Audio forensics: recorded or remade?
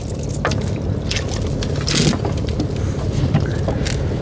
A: recorded